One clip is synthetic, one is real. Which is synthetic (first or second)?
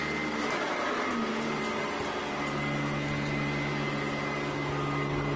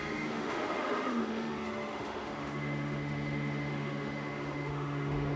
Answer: second